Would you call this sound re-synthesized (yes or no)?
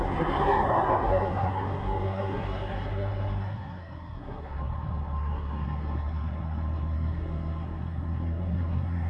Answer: yes